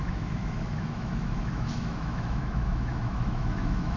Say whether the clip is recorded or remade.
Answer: remade